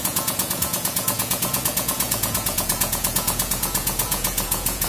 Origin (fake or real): fake